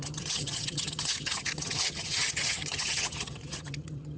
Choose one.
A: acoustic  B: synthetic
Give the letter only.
B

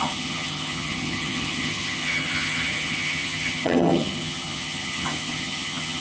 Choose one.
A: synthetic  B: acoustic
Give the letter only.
A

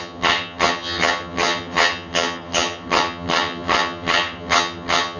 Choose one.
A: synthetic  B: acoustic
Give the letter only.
A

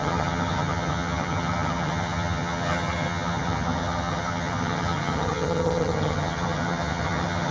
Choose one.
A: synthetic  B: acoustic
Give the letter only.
A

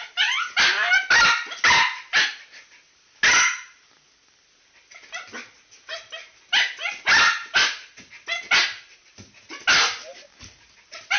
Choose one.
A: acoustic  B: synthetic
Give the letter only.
A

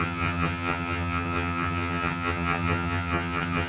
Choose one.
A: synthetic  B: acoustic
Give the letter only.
A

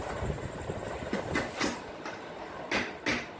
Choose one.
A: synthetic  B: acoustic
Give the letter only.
B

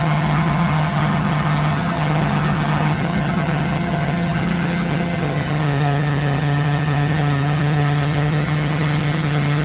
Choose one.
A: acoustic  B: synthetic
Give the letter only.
B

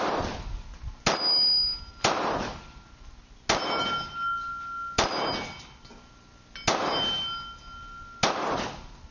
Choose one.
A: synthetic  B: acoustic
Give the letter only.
B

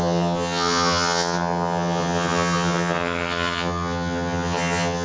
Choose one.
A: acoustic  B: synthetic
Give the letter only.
B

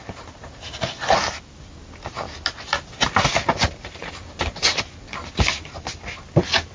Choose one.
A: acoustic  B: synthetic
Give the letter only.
A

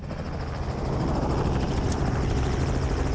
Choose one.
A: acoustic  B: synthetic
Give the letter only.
A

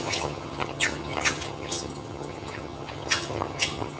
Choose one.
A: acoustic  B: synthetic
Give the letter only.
B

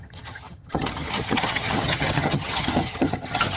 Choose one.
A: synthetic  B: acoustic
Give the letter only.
A